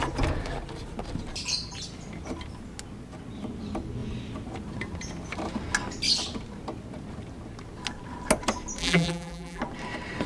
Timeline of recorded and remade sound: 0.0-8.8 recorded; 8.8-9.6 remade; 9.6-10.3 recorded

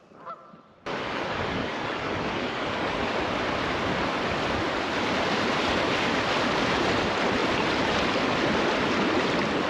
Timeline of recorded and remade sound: 0.0-0.9 recorded; 0.9-3.2 remade; 3.2-9.7 recorded

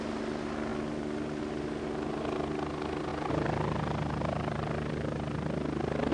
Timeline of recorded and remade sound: 0.0-6.1 recorded

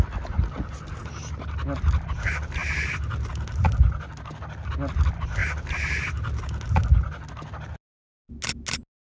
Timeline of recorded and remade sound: 0.0-9.1 recorded

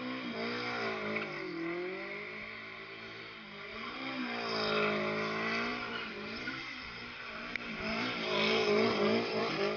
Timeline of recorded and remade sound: 0.0-3.7 recorded; 3.7-4.2 remade; 4.2-5.7 recorded; 5.7-9.4 remade; 9.4-9.8 recorded